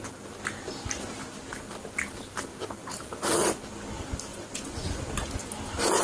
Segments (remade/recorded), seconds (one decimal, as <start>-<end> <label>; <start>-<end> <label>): 0.0-4.3 recorded; 4.3-5.0 remade; 5.0-6.0 recorded

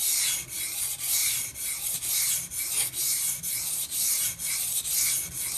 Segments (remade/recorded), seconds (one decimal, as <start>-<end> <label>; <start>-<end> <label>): 0.0-1.2 recorded; 1.2-2.6 remade; 2.6-3.1 recorded; 3.1-4.5 remade; 4.5-5.6 recorded